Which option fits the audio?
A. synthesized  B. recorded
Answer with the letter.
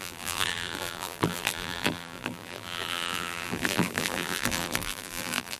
A